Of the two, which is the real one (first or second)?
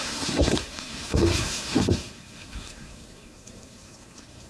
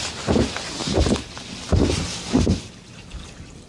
second